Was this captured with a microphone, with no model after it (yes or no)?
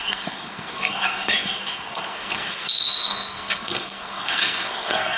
no